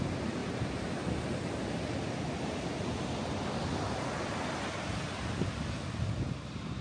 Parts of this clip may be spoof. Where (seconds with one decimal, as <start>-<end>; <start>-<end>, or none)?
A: none